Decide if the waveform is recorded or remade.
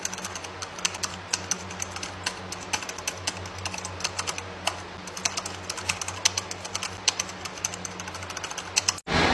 recorded